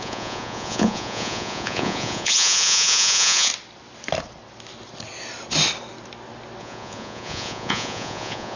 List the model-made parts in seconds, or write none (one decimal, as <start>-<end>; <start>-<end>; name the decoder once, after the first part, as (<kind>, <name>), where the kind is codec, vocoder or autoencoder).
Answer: 0.0-3.5 (vocoder, Vocos); 6.6-8.6

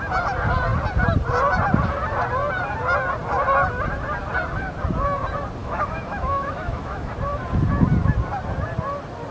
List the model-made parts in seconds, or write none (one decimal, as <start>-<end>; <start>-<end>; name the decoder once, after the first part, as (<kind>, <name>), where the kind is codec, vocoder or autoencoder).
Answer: 5.6-7.1 (autoencoder, DAC-VAE)

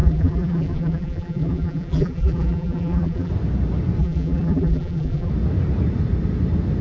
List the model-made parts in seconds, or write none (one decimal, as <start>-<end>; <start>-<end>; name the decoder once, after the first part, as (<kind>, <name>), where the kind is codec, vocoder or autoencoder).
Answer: 0.0-3.3 (vocoder, BigVGAN v2); 4.0-5.3

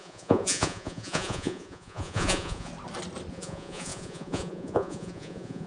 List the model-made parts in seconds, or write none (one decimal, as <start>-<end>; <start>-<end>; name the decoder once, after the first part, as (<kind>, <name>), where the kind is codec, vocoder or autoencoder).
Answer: 0.0-2.7 (vocoder, Vocos); 3.3-5.7

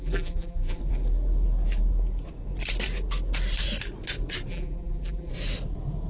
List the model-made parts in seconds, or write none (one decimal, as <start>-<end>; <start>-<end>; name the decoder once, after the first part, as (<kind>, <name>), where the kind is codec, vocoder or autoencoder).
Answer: 0.0-0.8 (vocoder, BigVGAN v2); 4.5-5.3